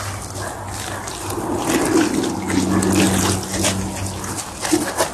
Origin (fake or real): real